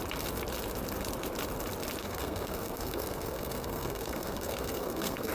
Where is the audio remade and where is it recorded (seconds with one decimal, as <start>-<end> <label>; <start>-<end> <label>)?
0.0-2.0 recorded; 2.0-5.3 remade